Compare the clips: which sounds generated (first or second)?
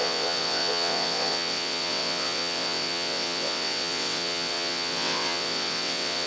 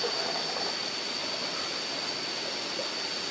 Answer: first